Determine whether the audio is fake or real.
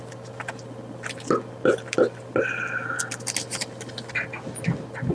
real